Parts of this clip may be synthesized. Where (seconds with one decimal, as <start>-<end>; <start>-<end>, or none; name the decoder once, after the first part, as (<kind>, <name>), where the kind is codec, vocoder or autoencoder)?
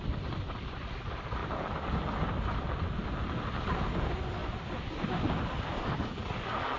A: 1.4-2.7 (vocoder, BigVGAN v2); 4.4-5.8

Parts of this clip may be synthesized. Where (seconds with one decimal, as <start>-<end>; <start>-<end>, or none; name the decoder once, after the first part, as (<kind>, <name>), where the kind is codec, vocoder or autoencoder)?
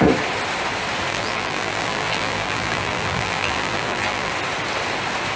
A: 1.1-4.3 (vocoder, BigVGAN v2)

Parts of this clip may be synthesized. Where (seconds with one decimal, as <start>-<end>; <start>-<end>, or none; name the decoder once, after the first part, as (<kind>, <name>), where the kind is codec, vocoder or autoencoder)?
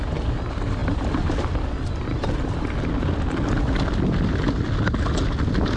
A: none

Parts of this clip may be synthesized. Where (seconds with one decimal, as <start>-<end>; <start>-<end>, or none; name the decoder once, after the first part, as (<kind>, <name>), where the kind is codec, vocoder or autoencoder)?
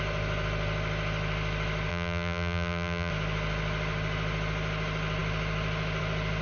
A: 1.9-3.1 (vocoder, BigVGAN v2)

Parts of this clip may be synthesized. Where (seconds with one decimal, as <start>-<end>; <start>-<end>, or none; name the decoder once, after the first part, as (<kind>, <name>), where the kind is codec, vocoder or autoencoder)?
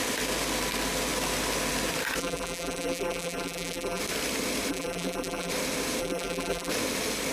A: 2.2-4.0 (vocoder, BigVGAN v2); 4.7-5.5; 6.0-6.7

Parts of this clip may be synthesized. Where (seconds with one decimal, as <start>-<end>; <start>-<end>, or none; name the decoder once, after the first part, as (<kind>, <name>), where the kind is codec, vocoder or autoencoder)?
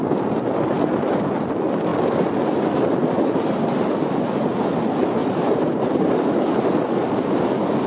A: 5.2-6.3 (vocoder, BigVGAN v2)